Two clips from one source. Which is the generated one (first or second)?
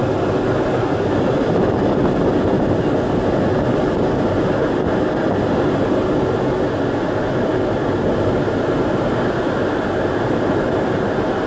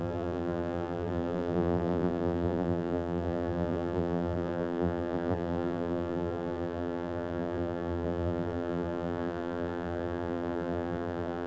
second